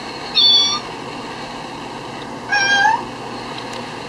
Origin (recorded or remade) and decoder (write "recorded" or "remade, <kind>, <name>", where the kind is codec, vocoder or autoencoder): recorded